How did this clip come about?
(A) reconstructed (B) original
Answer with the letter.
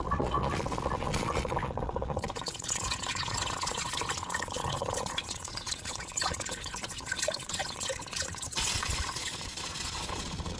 A